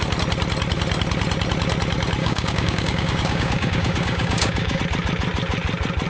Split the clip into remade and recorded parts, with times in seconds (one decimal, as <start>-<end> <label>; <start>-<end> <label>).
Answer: 0.0-2.2 recorded; 2.2-4.8 remade; 4.8-6.1 recorded